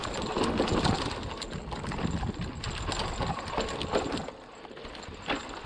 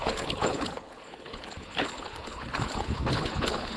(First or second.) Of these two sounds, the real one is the first